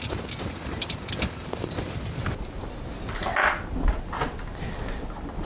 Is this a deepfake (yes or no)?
no